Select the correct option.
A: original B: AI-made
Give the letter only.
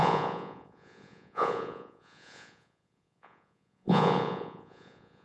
B